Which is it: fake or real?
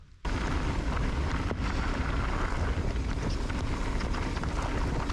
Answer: real